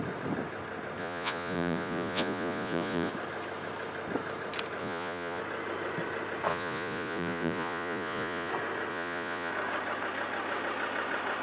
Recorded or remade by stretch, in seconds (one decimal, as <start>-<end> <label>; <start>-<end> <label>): 0.0-1.0 recorded; 1.0-3.1 remade; 3.1-4.8 recorded; 4.8-5.4 remade; 5.4-6.5 recorded; 6.5-8.5 remade; 8.5-8.9 recorded; 8.9-9.5 remade; 9.5-11.4 recorded